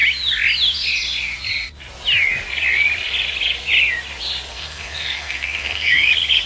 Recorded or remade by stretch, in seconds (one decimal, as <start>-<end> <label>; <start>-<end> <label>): 0.0-4.5 recorded; 4.5-6.1 remade; 6.1-6.5 recorded